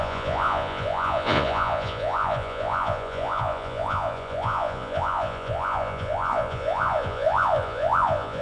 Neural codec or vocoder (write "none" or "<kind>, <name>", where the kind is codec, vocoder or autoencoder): vocoder, Vocos